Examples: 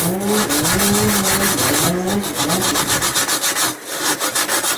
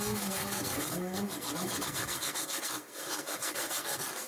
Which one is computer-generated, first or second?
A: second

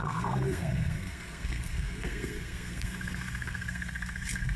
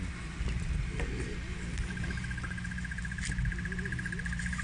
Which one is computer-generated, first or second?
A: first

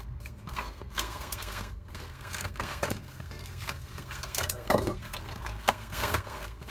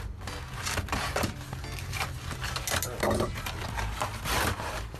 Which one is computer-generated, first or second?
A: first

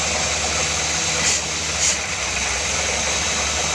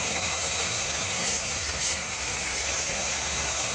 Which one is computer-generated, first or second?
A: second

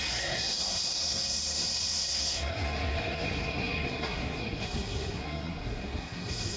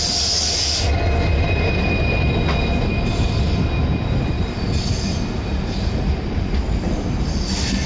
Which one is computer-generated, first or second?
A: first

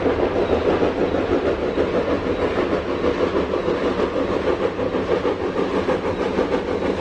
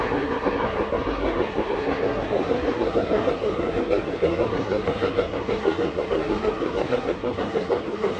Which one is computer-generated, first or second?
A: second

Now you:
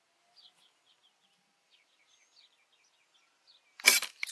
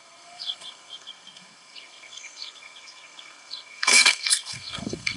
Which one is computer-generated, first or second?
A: second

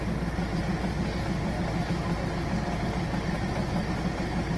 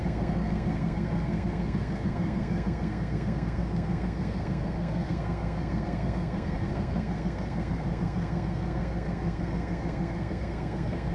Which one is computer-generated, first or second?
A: second